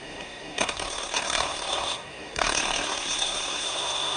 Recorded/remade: remade